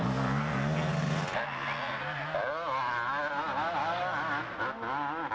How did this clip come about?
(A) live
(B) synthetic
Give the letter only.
A